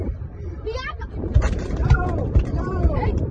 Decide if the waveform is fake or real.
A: fake